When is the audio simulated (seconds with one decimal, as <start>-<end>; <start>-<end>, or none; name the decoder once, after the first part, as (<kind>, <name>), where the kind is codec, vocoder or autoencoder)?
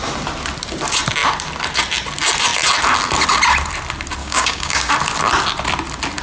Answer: 4.2-4.9 (codec, DAC)